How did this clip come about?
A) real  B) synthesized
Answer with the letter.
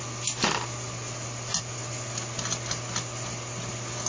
A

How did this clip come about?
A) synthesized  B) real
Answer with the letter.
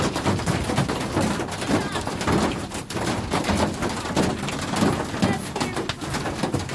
B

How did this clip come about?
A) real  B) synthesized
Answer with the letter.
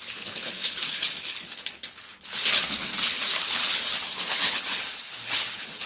B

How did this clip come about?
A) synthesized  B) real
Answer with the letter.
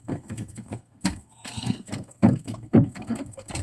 A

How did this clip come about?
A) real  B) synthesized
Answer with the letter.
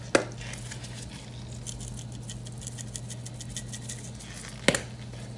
A